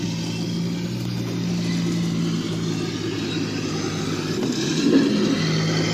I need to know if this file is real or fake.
real